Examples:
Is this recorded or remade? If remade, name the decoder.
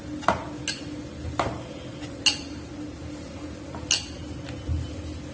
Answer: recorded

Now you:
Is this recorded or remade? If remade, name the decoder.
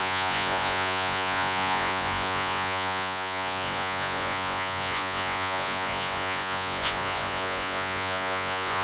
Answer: remade, vocoder, Vocos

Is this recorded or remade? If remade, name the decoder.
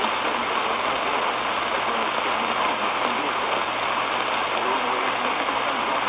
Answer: recorded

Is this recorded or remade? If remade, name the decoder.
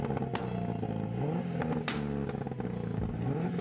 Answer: recorded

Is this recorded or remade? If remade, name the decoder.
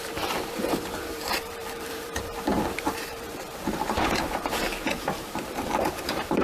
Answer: remade, vocoder, BigVGAN v2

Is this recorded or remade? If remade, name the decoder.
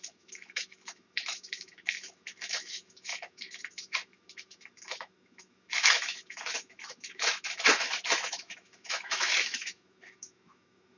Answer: remade, autoencoder, DAC-VAE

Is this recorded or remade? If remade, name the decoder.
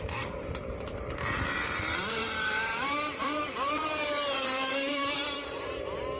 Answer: remade, vocoder, BigVGAN v2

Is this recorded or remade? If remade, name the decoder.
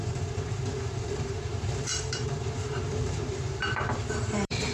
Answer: remade, vocoder, BigVGAN v2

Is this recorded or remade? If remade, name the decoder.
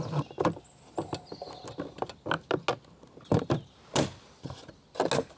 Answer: recorded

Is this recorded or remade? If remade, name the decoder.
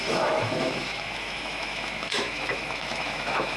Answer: remade, autoencoder, DAC-VAE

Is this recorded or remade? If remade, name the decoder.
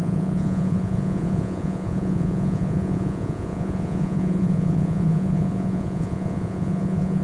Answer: remade, vocoder, Vocos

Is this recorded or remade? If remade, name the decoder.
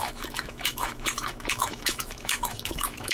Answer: remade, autoencoder, DAC-VAE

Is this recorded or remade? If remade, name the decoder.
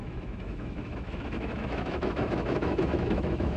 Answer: remade, autoencoder, DAC-VAE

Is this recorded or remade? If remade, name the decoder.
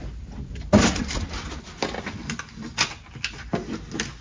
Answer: recorded